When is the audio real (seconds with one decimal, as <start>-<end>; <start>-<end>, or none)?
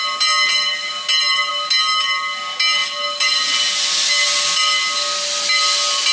0.0-6.1